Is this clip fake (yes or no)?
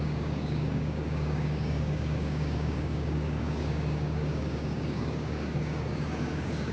yes